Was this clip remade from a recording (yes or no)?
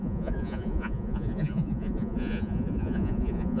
yes